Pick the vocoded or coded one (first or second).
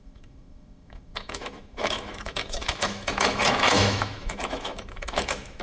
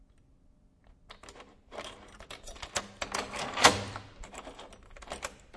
first